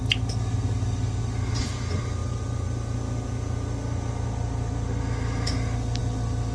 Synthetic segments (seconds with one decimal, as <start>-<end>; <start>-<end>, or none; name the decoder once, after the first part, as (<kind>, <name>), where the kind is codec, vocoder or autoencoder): none